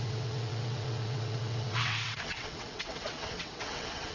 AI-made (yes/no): yes